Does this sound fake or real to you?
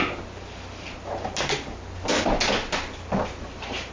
real